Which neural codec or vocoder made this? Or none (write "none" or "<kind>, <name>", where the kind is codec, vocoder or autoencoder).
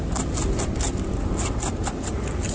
none